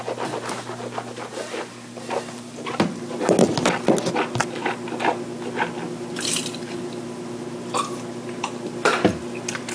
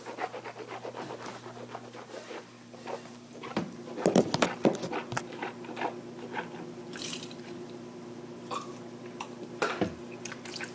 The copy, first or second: second